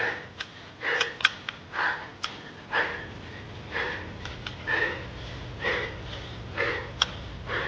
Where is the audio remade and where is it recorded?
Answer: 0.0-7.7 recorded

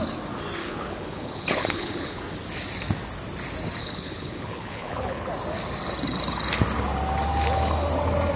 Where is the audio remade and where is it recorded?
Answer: 0.0-0.6 recorded; 0.6-2.2 remade; 2.2-3.8 recorded; 3.8-5.2 remade; 5.2-8.4 recorded

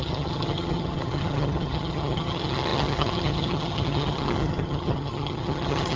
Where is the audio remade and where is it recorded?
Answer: 0.0-6.0 remade

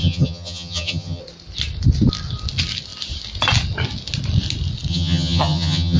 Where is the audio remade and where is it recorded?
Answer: 0.0-1.2 remade; 1.2-4.9 recorded; 4.9-6.0 remade

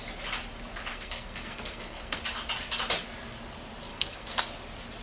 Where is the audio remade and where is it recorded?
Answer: 0.0-0.9 recorded; 0.9-2.2 remade; 2.2-3.9 recorded; 3.9-4.4 remade; 4.4-5.0 recorded